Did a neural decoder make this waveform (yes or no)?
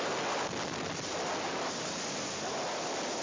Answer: no